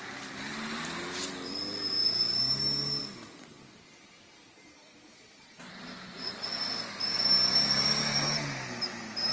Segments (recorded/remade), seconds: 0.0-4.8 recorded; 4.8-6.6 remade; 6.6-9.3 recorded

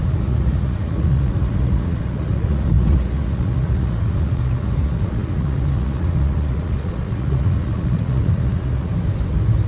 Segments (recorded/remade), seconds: 0.0-8.9 remade; 8.9-9.7 recorded